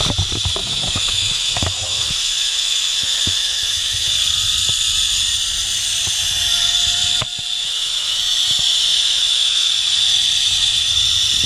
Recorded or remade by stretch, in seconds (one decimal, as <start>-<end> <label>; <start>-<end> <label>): 0.0-0.6 recorded; 0.6-4.1 remade; 4.1-7.6 recorded; 7.6-8.2 remade; 8.2-8.7 recorded; 8.7-9.7 remade; 9.7-11.5 recorded